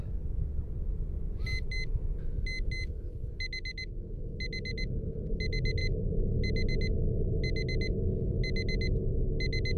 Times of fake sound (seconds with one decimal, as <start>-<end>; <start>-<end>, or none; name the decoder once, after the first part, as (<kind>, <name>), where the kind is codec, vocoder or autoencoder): none

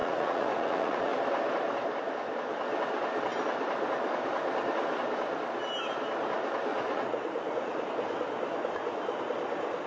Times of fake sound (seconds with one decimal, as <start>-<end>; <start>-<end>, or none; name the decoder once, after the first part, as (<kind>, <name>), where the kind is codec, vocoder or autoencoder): 0.0-1.1 (vocoder, Vocos); 6.7-7.8

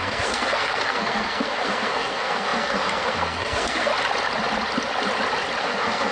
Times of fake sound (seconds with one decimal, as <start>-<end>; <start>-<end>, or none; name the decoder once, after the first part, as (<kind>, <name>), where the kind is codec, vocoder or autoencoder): 0.0-3.9 (codec, SNAC); 5.6-6.1

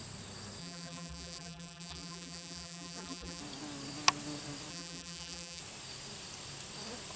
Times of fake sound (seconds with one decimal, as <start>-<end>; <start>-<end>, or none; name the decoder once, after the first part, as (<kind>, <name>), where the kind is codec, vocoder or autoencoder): 0.6-3.4 (vocoder, BigVGAN v2); 4.7-5.6